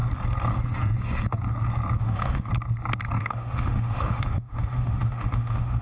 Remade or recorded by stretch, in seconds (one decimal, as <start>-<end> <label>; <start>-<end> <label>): 0.0-2.0 recorded; 2.0-2.5 remade; 2.5-3.2 recorded; 3.2-5.8 remade